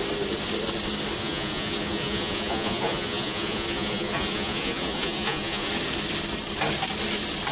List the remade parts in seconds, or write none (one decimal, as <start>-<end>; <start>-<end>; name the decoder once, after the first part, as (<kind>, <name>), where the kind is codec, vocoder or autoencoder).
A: 1.2-5.7 (vocoder, Vocos)